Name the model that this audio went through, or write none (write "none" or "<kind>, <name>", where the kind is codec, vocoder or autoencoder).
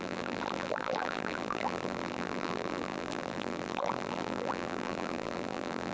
vocoder, BigVGAN v2